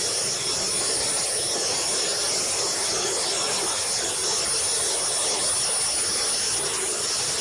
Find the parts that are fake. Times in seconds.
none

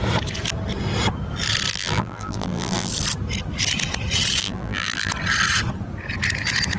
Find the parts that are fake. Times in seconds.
1.7-2.9; 4.4-5.1